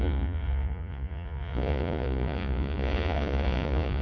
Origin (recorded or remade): remade